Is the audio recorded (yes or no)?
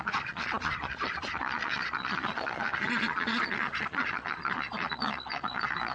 no